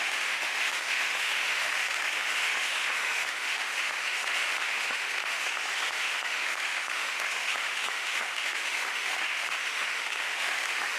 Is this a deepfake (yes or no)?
yes